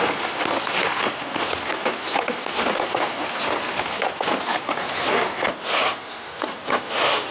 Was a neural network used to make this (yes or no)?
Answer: no